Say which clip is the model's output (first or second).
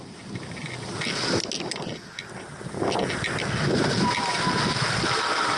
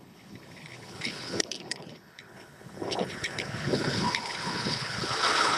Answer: second